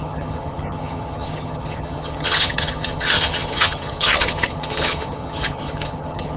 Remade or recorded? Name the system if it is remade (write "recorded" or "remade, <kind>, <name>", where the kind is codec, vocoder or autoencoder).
remade, vocoder, HiFi-GAN